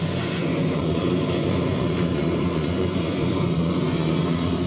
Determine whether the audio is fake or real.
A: fake